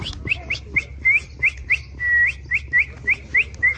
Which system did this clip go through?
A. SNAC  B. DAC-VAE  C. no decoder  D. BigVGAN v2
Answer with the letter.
C